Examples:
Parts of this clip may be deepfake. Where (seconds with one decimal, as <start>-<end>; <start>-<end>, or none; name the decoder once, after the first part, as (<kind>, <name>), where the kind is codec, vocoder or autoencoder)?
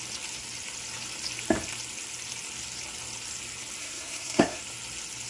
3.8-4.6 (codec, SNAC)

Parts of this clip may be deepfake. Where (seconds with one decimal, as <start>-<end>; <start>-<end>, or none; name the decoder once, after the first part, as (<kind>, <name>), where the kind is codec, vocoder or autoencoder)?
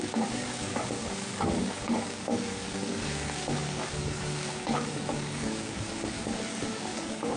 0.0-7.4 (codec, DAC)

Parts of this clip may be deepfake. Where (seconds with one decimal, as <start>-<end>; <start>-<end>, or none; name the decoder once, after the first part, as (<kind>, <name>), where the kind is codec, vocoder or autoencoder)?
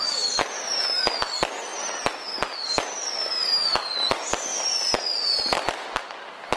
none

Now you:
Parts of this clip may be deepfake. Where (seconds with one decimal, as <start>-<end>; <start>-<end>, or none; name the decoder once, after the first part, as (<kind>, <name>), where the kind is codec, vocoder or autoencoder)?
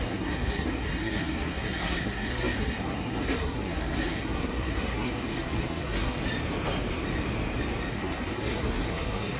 0.0-6.2 (codec, SNAC); 7.9-9.4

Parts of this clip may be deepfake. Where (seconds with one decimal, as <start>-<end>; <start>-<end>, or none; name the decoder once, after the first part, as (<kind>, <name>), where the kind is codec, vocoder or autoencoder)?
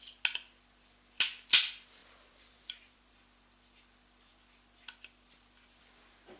2.0-3.1 (vocoder, BigVGAN v2)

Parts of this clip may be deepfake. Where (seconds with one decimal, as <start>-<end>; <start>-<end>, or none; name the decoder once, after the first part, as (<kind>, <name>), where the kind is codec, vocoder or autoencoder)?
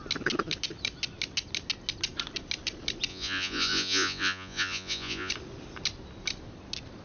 3.1-5.3 (vocoder, Vocos)